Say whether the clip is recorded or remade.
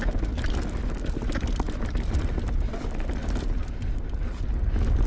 recorded